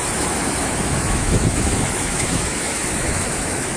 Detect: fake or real fake